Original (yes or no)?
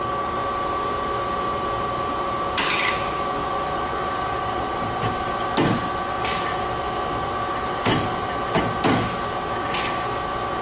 yes